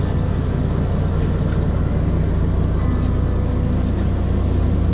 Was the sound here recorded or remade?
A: recorded